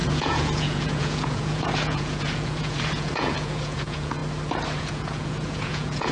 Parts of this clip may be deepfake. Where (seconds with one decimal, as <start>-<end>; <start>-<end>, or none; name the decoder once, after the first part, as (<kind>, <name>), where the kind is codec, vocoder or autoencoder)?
0.0-4.2 (vocoder, Vocos); 4.8-6.1